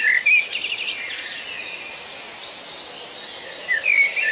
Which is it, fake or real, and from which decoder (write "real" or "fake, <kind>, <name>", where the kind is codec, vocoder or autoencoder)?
real